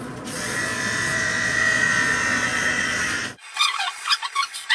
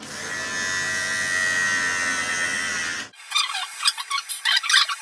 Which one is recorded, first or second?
second